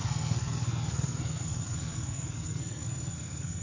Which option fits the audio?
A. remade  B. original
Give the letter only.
A